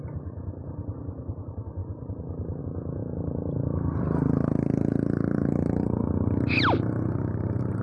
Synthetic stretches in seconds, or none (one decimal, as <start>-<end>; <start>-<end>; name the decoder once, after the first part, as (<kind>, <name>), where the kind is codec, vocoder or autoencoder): none